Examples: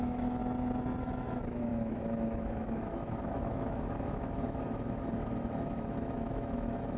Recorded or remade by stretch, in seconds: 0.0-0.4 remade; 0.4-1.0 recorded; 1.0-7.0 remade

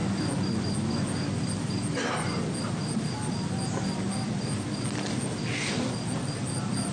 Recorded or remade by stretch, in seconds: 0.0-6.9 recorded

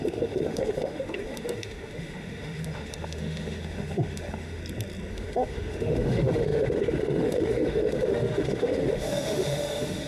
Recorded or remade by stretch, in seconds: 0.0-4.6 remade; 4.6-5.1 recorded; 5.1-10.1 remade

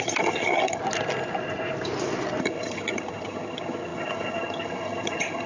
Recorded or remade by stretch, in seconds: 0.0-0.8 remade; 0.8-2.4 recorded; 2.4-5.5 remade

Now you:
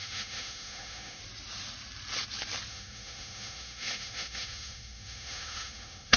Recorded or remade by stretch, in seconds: 0.0-1.2 remade; 1.2-2.7 recorded; 2.7-6.2 remade

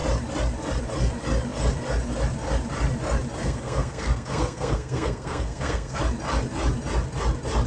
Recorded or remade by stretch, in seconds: 0.0-3.4 recorded; 3.4-6.0 remade; 6.0-7.7 recorded